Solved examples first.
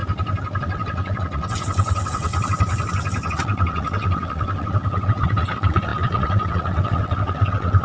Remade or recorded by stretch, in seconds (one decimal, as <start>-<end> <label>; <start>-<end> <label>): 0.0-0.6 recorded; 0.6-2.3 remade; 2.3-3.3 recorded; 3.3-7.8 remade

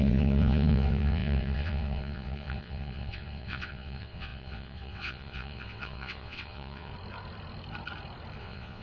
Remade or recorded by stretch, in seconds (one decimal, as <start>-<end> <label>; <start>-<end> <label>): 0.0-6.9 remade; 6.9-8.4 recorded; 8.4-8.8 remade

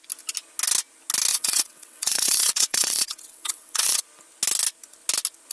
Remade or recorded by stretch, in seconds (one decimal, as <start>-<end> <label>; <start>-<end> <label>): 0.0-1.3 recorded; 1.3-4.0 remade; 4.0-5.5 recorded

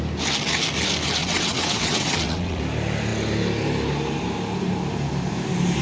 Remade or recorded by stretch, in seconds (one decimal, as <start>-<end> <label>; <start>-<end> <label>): 0.0-1.2 recorded; 1.2-2.6 remade; 2.6-5.8 recorded

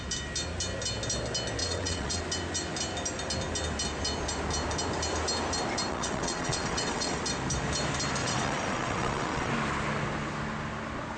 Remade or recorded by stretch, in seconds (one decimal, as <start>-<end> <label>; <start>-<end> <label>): 0.0-1.6 recorded; 1.6-2.2 remade; 2.2-5.9 recorded; 5.9-7.2 remade; 7.2-8.2 recorded; 8.2-9.5 remade; 9.5-11.2 recorded

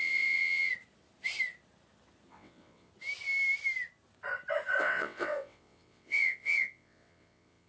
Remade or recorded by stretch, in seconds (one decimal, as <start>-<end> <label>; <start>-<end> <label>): 0.0-0.7 remade; 0.7-2.3 recorded; 2.3-2.9 remade; 2.9-4.8 recorded; 4.8-7.7 remade